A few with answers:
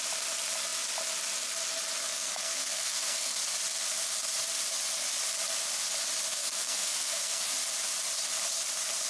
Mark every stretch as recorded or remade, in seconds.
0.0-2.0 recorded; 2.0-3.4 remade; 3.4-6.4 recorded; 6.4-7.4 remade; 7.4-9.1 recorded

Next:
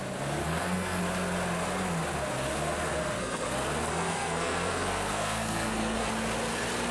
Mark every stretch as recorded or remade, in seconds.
0.0-0.4 recorded; 0.4-1.0 remade; 1.0-2.9 recorded; 2.9-3.5 remade; 3.5-3.9 recorded; 3.9-6.1 remade; 6.1-6.9 recorded

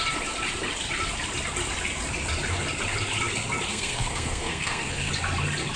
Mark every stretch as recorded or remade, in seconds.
0.0-3.7 recorded; 3.7-5.1 remade; 5.1-5.8 recorded

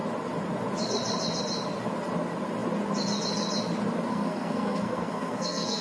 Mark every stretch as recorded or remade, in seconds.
0.0-4.1 recorded; 4.1-5.8 remade